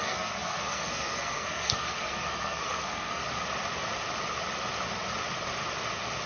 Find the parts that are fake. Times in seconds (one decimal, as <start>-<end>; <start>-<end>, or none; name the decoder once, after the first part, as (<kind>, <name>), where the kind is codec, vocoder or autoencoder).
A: 0.0-3.2 (codec, SNAC)